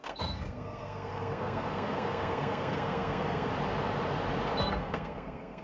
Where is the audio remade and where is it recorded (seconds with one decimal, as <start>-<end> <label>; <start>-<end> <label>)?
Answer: 0.0-3.5 remade; 3.5-4.6 recorded; 4.6-5.6 remade